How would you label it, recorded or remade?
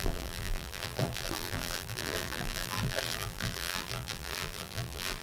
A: remade